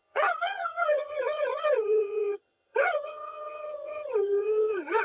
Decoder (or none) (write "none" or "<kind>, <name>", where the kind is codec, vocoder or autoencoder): vocoder, HiFi-GAN